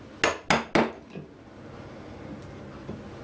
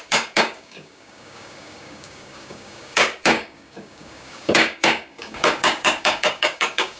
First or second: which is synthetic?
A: second